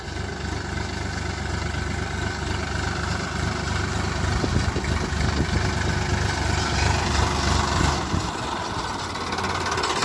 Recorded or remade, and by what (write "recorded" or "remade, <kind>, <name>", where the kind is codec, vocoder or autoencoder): recorded